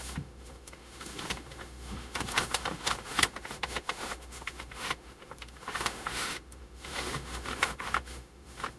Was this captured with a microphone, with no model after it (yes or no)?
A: no